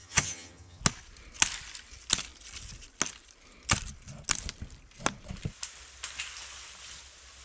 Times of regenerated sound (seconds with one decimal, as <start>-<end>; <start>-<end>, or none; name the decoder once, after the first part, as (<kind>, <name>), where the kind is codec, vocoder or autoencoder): 0.0-0.8 (vocoder, HiFi-GAN)